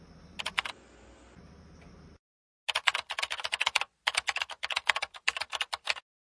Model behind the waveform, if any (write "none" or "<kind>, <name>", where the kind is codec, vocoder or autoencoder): none